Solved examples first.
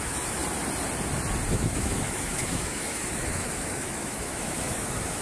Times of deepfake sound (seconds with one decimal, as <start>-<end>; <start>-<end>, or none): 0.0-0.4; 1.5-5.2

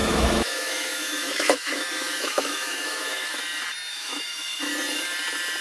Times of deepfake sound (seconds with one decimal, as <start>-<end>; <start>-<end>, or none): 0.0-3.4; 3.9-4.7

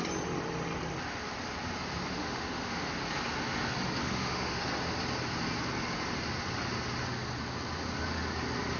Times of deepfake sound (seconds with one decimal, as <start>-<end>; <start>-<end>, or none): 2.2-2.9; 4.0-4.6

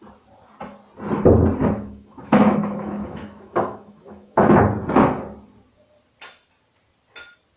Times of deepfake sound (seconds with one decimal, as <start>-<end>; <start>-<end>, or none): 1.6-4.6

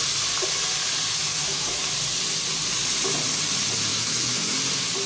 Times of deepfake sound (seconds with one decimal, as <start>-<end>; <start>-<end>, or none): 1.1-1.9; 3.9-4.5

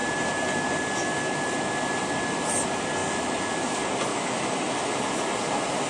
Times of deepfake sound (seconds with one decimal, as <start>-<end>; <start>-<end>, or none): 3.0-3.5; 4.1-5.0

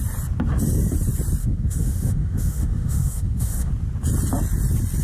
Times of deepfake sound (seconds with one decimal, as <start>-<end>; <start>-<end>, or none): 1.4-3.7